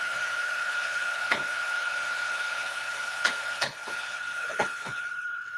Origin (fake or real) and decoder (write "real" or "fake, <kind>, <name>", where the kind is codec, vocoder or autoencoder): fake, codec, HILCodec